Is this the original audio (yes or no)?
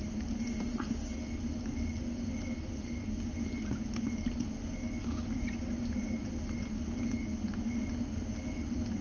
yes